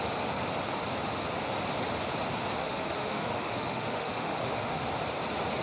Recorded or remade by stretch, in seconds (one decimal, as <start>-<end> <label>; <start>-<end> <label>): 0.0-2.6 recorded; 2.6-4.9 remade; 4.9-5.6 recorded